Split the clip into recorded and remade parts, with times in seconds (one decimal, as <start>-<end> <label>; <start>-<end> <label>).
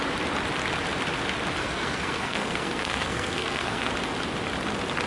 0.0-1.6 recorded; 1.6-3.9 remade; 3.9-5.1 recorded